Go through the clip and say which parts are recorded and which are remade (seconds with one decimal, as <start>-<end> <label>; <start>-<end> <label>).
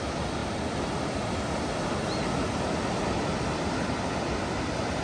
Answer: 0.0-5.0 recorded